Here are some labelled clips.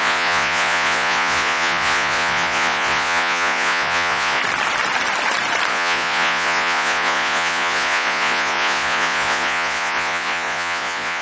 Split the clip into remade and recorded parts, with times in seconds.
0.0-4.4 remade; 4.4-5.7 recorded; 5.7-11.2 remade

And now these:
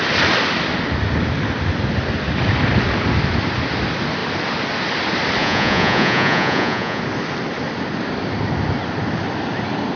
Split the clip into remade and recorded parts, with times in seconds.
0.0-5.4 recorded; 5.4-7.0 remade; 7.0-10.0 recorded

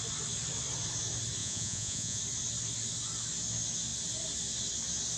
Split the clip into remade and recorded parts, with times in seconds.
0.0-1.4 recorded; 1.4-2.2 remade; 2.2-5.2 recorded

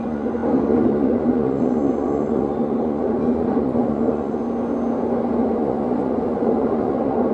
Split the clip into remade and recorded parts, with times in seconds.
0.0-4.4 remade; 4.4-5.4 recorded; 5.4-7.3 remade

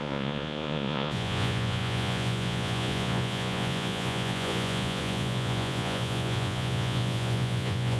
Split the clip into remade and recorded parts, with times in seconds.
0.0-8.0 remade

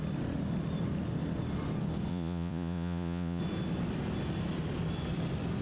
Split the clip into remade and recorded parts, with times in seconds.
0.0-2.1 recorded; 2.1-3.4 remade; 3.4-5.6 recorded

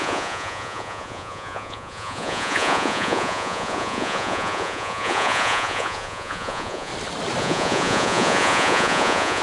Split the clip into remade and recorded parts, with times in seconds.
0.0-6.9 remade; 6.9-7.4 recorded; 7.4-9.4 remade